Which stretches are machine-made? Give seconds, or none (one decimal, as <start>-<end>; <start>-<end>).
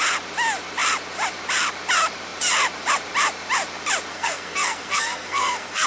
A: 4.1-5.9